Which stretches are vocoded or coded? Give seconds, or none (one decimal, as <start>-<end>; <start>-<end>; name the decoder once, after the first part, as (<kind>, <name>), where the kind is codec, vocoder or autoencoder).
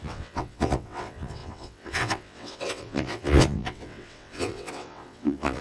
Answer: 0.0-5.6 (vocoder, WaveNeXt)